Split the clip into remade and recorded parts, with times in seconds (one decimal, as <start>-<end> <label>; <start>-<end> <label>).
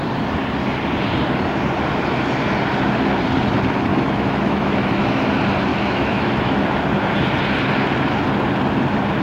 0.0-3.9 recorded; 3.9-5.3 remade; 5.3-5.7 recorded; 5.7-6.8 remade; 6.8-9.2 recorded